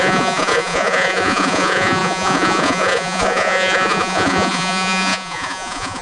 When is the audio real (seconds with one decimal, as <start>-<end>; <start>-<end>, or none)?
none